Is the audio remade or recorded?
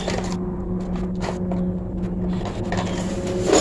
recorded